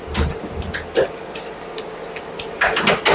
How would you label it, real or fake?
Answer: real